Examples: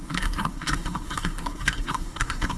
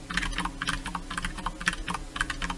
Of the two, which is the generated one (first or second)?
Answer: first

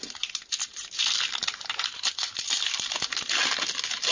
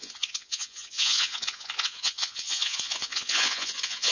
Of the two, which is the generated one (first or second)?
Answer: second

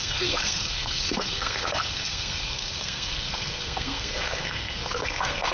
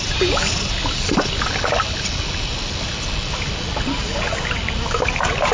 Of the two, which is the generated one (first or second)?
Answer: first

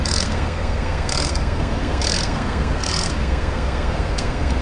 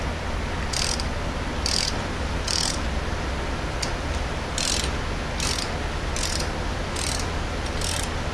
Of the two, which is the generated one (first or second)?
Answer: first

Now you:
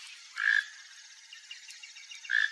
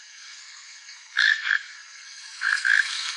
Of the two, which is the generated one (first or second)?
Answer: second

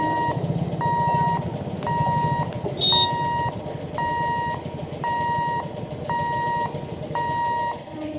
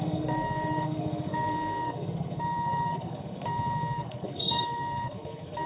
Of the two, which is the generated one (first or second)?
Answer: second